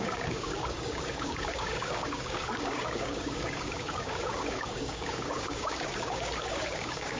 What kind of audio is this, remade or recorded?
remade